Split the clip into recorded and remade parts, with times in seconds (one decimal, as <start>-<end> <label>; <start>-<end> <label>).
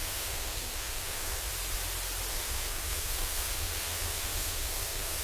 0.0-1.5 remade; 1.5-2.3 recorded; 2.3-5.2 remade